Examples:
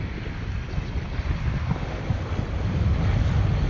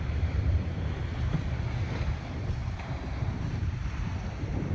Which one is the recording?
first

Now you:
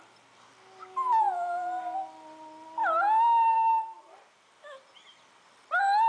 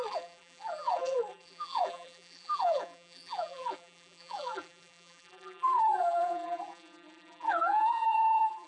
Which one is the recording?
first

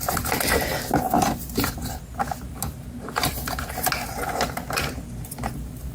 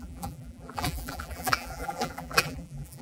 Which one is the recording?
first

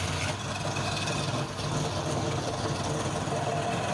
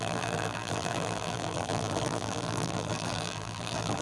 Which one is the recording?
first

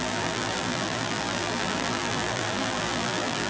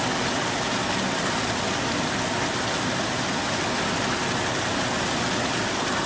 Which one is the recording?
second